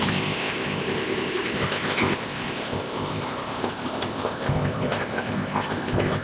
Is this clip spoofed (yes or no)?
yes